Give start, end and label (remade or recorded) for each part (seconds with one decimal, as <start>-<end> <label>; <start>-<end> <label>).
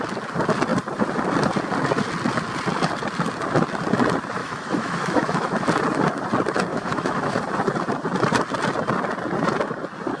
0.0-4.4 recorded; 4.4-5.6 remade; 5.6-6.7 recorded; 6.7-7.4 remade; 7.4-10.2 recorded